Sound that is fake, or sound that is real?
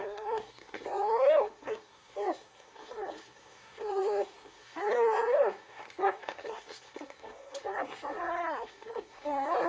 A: fake